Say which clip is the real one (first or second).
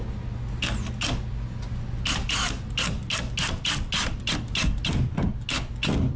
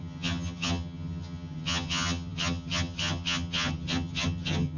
first